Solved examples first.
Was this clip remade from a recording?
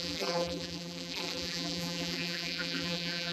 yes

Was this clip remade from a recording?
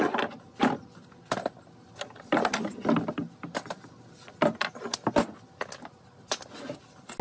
no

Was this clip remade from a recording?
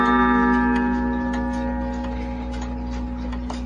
no